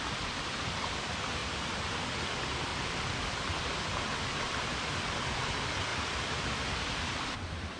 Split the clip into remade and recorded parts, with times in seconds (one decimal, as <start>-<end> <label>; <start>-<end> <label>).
0.0-1.4 remade; 1.4-2.1 recorded; 2.1-2.7 remade; 2.7-4.3 recorded; 4.3-5.9 remade; 5.9-7.2 recorded; 7.2-7.8 remade